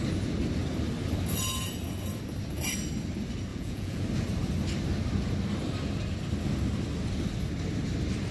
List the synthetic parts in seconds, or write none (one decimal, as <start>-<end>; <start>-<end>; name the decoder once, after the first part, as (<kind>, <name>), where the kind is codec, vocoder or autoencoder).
3.5-4.0 (vocoder, Vocos)

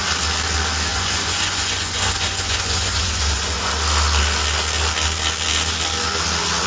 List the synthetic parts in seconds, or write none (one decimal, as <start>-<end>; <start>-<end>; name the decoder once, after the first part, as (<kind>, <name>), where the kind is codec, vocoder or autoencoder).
0.9-3.7 (vocoder, Vocos)

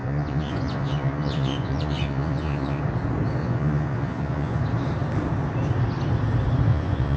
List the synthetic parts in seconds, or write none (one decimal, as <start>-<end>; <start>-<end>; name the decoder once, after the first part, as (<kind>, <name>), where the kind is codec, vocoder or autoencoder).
0.0-2.8 (vocoder, Vocos); 3.4-4.6; 6.7-7.2

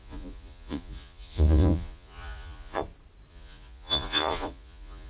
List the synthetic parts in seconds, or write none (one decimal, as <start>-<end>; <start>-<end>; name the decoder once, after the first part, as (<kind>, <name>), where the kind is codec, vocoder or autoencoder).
0.0-2.8 (vocoder, Vocos); 3.3-5.1

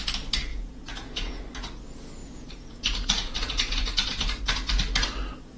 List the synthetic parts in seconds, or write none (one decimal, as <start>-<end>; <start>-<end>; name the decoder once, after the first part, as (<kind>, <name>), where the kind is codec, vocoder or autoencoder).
0.5-1.4 (vocoder, Vocos); 2.2-4.4